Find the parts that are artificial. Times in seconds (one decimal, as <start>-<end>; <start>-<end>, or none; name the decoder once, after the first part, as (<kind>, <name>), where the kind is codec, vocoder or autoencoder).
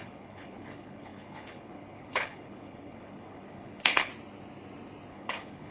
0.0-4.1 (codec, HILCodec); 5.1-5.7